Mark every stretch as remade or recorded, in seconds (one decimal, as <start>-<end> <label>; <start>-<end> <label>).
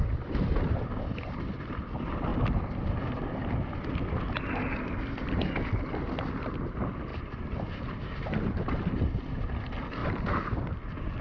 0.0-11.2 recorded